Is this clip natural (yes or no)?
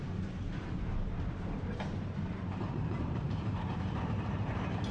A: no